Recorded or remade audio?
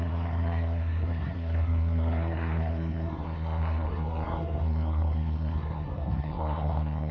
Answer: remade